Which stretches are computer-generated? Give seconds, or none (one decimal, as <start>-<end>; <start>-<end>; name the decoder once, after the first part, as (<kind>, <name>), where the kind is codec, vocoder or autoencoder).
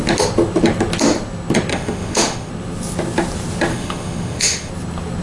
1.7-2.5 (autoencoder, DAC-VAE); 3.7-4.7